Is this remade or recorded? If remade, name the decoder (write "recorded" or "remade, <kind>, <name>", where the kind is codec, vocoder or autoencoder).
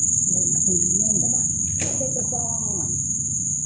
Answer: recorded